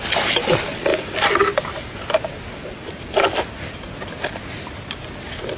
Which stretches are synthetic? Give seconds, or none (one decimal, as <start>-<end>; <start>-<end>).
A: none

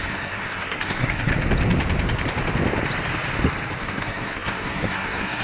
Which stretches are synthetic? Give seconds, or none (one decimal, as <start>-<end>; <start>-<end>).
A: 0.0-1.3; 3.8-5.4

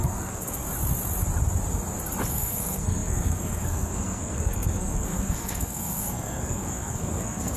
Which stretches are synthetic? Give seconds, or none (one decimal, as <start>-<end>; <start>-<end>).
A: 0.0-0.6; 2.3-7.6

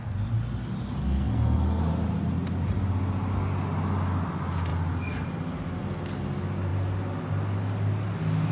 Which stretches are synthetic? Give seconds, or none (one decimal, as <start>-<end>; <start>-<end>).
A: 1.0-1.8